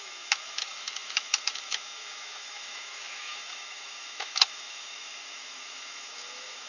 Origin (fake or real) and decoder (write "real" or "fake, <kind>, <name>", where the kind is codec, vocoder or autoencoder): fake, autoencoder, DAC-VAE